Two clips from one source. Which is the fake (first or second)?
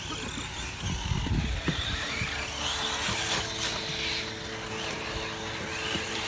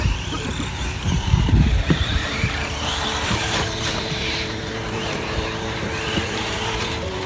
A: second